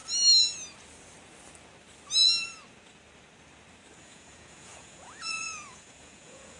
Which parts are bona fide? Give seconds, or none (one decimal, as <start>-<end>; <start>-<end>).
0.0-4.0